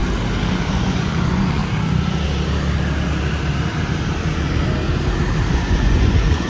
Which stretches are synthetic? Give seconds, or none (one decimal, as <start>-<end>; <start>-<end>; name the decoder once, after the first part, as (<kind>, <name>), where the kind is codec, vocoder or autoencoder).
0.7-1.6 (vocoder, Vocos); 5.5-6.5